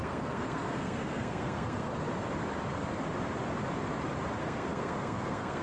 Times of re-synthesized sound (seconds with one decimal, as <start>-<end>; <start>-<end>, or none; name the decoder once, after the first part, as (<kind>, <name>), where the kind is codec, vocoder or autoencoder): 0.0-1.9 (codec, SNAC); 4.4-5.6